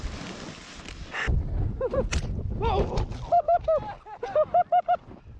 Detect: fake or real real